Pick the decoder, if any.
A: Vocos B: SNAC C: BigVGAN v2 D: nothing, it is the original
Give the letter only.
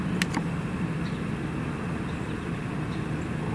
D